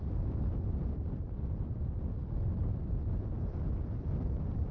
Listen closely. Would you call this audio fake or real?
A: fake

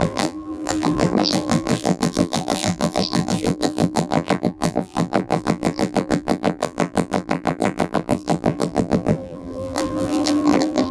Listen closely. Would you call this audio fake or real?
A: fake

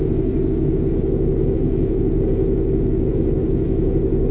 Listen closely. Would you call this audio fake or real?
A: real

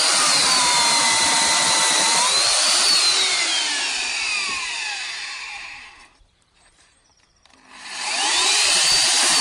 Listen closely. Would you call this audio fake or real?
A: fake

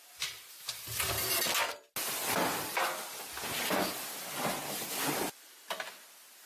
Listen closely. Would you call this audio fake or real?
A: real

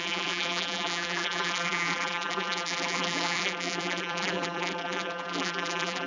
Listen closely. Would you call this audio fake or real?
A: fake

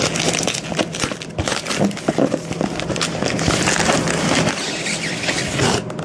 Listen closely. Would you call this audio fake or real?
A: real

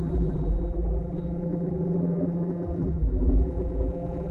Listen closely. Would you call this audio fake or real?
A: fake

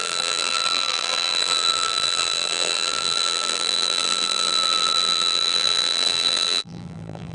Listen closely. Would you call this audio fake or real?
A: fake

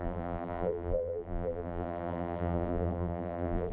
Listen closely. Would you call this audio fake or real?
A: fake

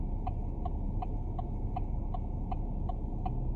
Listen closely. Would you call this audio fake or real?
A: real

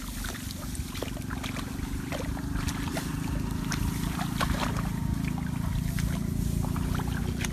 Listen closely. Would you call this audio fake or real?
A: real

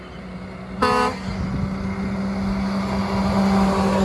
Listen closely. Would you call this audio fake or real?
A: real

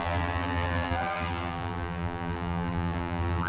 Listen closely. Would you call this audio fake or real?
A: fake